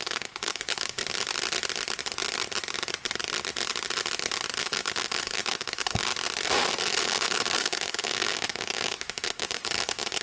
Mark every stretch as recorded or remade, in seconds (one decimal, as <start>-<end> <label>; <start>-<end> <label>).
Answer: 0.0-1.0 remade; 1.0-4.6 recorded; 4.6-6.1 remade; 6.1-7.0 recorded; 7.0-10.2 remade